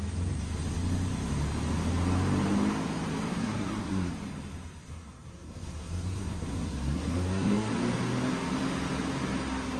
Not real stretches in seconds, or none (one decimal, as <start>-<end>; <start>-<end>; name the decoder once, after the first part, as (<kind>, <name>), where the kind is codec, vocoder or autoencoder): 3.3-4.1 (codec, SNAC); 4.9-7.7

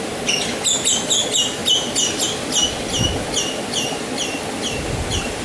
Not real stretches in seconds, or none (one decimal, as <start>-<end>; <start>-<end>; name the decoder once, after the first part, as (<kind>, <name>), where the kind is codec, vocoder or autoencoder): none